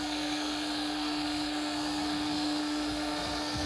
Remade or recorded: remade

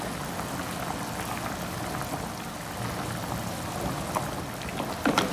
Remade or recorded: recorded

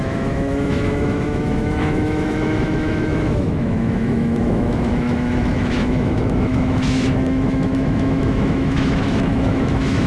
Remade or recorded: remade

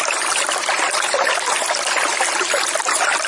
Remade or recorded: recorded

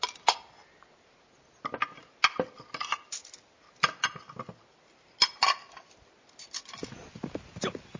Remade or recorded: recorded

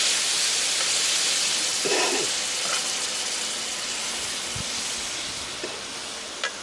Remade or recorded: recorded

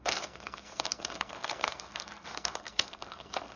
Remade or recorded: remade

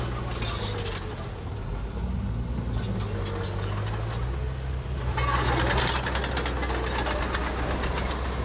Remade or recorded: recorded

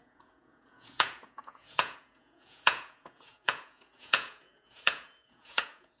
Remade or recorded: remade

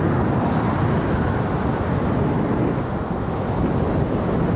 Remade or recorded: recorded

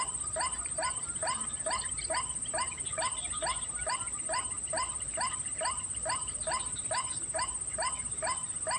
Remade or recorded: recorded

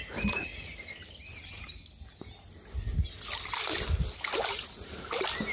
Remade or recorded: recorded